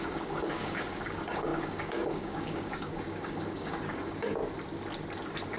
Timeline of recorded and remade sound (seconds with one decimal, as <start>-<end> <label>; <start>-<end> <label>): 0.0-4.4 remade; 4.4-5.6 recorded